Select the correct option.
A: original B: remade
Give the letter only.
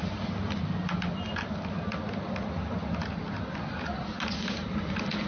A